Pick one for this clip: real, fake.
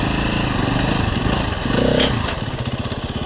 real